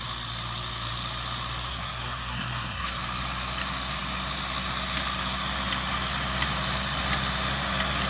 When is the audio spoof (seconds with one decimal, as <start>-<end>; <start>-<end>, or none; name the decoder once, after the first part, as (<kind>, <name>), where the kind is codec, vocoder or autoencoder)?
1.7-3.0 (codec, SNAC)

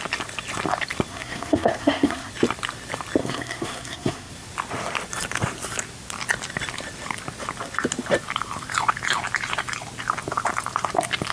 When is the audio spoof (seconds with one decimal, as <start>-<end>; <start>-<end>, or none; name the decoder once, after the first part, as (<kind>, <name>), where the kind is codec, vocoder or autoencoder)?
1.1-2.3 (codec, SNAC); 3.2-4.3

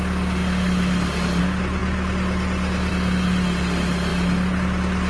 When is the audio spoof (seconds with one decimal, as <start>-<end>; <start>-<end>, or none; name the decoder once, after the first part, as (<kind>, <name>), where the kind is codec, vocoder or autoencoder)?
none

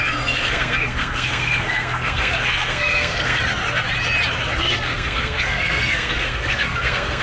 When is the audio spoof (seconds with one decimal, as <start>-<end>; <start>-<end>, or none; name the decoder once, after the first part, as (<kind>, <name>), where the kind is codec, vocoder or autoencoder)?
0.0-3.4 (codec, SNAC); 4.6-7.2

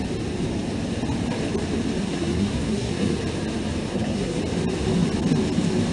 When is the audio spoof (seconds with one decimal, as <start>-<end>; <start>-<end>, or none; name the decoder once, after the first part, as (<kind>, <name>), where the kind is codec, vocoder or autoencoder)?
2.0-3.2 (codec, SNAC); 3.9-4.4

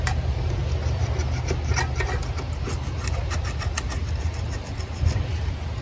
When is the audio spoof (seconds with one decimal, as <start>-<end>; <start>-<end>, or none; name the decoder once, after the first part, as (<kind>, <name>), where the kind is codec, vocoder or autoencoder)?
none

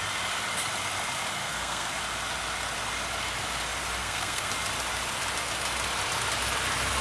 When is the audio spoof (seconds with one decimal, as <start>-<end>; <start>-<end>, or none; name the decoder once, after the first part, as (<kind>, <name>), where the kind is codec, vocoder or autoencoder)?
1.4-2.0 (codec, SNAC); 4.0-4.5

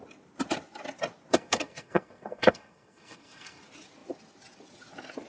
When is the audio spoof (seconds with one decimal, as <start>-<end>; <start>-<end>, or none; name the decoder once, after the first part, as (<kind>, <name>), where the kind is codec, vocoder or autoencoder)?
1.3-3.6 (codec, SNAC)